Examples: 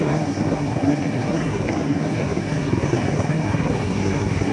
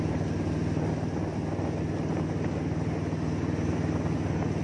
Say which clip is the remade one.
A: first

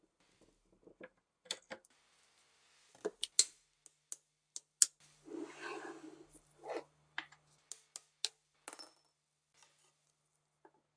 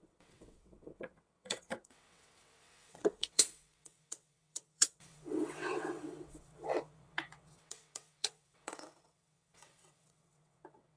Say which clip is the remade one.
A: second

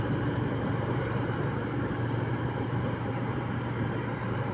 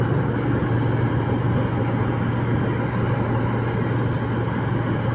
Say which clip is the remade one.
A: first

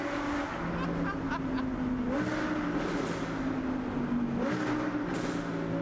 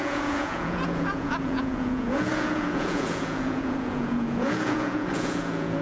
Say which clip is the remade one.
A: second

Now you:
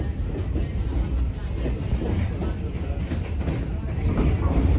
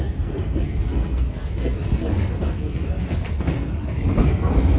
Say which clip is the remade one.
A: second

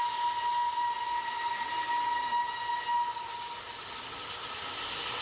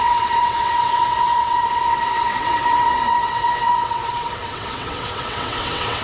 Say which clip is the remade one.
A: second